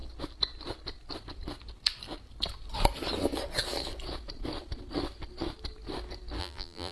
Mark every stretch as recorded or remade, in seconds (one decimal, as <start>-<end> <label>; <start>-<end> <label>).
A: 0.0-6.4 recorded; 6.4-6.9 remade